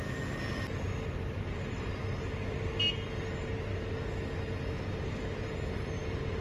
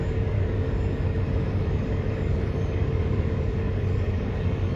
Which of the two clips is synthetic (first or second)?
second